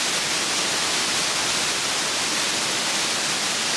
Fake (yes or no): no